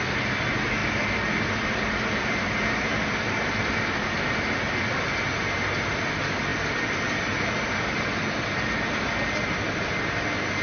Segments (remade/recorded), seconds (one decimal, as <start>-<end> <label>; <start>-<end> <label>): 0.0-0.8 recorded; 0.8-2.1 remade; 2.1-2.9 recorded; 2.9-4.0 remade; 4.0-6.5 recorded; 6.5-7.4 remade; 7.4-10.6 recorded